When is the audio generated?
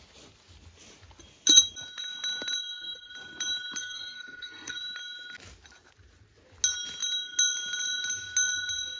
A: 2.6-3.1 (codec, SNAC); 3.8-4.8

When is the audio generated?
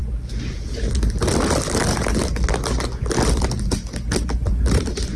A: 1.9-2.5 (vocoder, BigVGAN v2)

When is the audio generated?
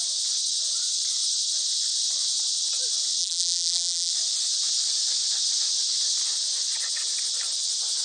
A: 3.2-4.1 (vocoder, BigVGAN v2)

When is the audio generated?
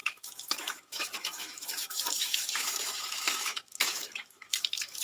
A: 0.0-5.0 (autoencoder, DAC-VAE)